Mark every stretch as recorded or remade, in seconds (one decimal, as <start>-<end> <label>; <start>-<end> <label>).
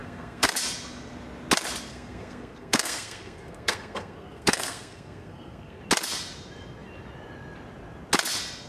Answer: 0.0-0.5 remade; 0.5-1.9 recorded; 1.9-5.8 remade; 5.8-8.7 recorded